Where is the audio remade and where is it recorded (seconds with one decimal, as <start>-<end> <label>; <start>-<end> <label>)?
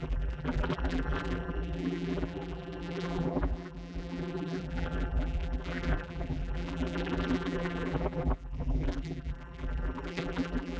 0.0-10.8 remade